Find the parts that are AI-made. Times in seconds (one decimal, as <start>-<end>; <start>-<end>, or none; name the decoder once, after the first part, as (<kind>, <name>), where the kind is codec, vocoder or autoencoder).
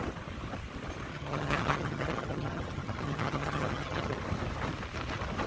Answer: 1.1-4.2 (vocoder, HiFi-GAN)